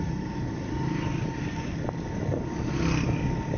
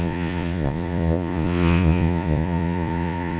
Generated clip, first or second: second